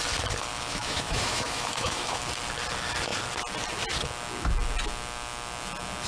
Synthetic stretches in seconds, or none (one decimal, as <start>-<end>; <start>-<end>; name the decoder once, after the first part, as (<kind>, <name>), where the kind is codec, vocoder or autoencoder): 0.5-2.2 (autoencoder, DAC-VAE)